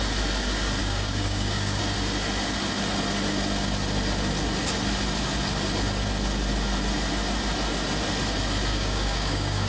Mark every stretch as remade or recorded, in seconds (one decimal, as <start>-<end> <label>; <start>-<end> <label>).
0.0-0.8 recorded; 0.8-1.8 remade; 1.8-8.7 recorded; 8.7-9.7 remade